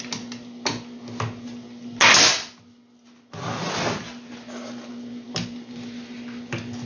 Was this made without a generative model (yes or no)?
yes